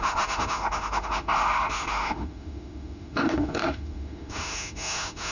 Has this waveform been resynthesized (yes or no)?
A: yes